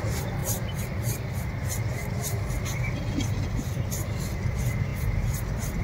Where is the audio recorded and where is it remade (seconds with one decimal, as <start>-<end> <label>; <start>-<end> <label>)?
0.0-5.8 recorded